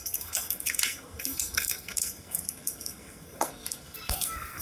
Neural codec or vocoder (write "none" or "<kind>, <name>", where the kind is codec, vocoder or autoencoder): codec, SNAC